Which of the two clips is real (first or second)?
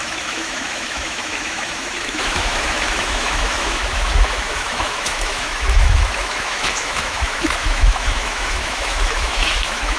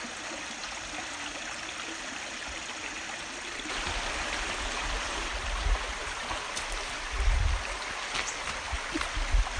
second